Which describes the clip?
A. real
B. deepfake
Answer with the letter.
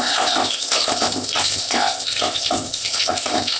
B